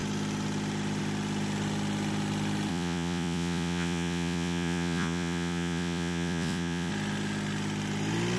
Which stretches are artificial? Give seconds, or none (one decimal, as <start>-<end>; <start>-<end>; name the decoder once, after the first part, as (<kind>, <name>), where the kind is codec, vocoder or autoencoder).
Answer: 2.7-6.9 (vocoder, Vocos)